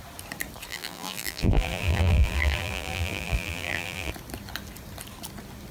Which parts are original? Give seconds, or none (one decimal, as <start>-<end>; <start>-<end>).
0.0-0.7; 4.1-5.7